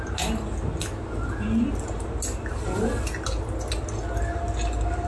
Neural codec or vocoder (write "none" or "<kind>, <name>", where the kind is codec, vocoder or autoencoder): none